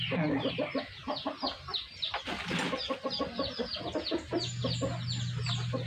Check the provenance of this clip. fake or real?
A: real